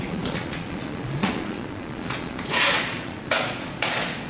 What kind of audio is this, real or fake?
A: fake